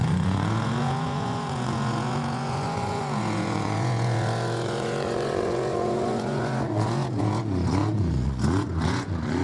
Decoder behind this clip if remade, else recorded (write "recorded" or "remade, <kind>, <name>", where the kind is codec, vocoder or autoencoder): remade, vocoder, Vocos